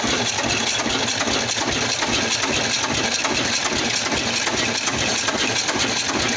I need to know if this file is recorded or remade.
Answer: recorded